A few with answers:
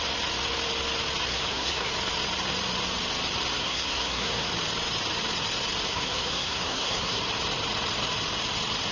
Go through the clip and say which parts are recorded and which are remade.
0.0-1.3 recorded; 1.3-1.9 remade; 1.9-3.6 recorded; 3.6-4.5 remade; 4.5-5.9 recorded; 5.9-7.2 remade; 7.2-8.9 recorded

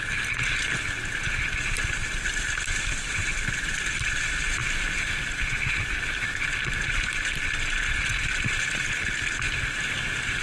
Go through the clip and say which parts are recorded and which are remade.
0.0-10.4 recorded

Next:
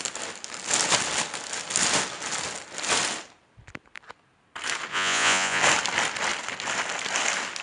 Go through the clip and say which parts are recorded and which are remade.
0.0-4.9 recorded; 4.9-5.6 remade; 5.6-7.6 recorded

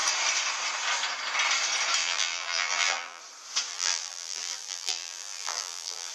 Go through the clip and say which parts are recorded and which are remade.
0.0-2.0 recorded; 2.0-3.2 remade; 3.2-3.7 recorded; 3.7-6.1 remade

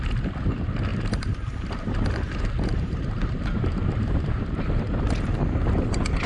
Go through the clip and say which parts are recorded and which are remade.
0.0-0.9 recorded; 0.9-4.7 remade; 4.7-6.3 recorded